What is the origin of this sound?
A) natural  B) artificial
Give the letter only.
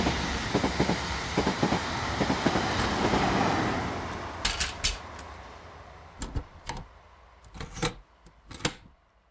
A